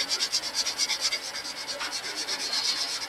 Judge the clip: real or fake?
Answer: real